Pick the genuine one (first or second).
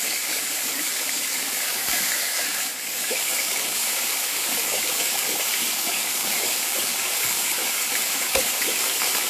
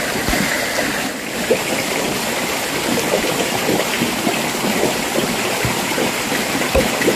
second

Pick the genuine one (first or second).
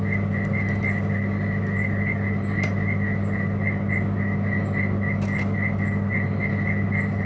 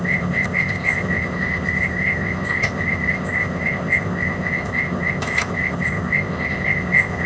first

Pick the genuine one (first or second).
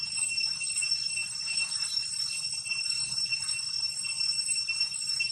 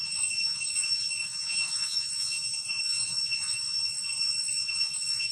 first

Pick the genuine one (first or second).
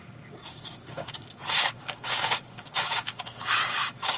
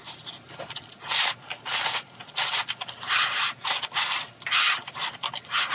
second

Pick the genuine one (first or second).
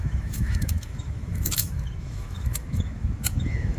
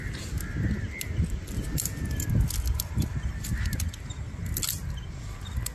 second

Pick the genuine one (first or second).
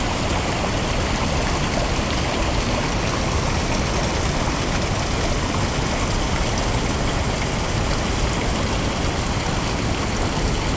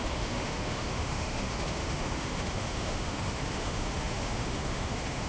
first